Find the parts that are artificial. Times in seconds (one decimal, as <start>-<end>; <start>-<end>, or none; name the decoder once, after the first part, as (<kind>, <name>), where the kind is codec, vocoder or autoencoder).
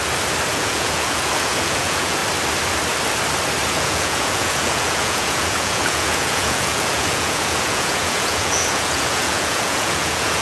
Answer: 0.5-2.2 (vocoder, Vocos); 3.7-10.4